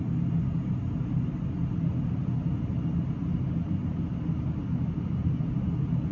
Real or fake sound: real